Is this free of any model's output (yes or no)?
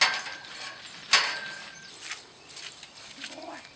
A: yes